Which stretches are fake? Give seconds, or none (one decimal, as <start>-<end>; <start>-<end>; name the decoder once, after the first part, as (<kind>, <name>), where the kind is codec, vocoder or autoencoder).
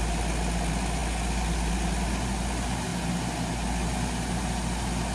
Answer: none